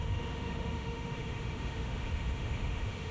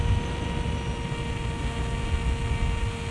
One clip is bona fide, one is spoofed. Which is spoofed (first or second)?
first